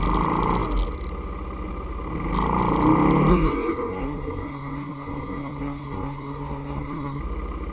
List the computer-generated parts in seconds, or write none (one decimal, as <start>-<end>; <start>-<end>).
3.3-7.2